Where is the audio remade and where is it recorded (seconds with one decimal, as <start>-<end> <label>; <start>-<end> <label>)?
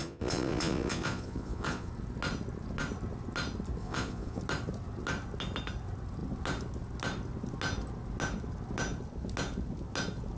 0.0-1.9 remade; 1.9-3.8 recorded; 3.8-4.4 remade; 4.4-10.4 recorded